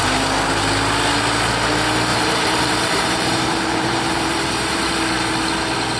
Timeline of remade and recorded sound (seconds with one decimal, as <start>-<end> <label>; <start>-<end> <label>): 0.0-2.1 recorded; 2.1-4.9 remade; 4.9-6.0 recorded